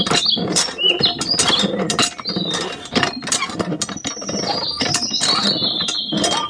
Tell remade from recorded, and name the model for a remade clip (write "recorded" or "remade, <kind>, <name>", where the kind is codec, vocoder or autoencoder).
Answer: recorded